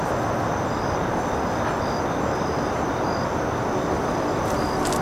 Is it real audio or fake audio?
real